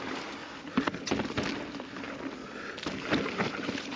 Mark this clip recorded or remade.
recorded